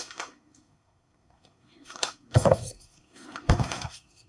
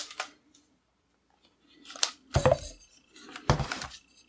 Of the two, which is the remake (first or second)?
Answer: first